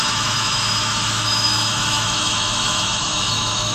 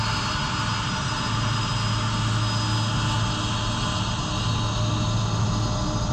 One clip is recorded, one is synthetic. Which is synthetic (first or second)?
first